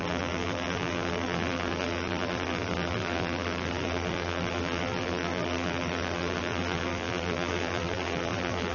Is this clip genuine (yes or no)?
no